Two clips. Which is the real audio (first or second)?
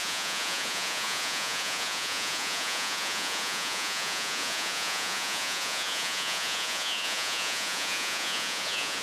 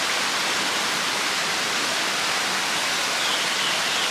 second